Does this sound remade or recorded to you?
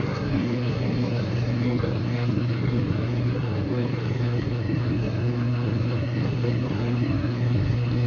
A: remade